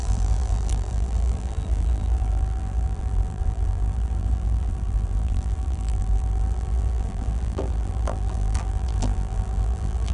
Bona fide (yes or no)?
no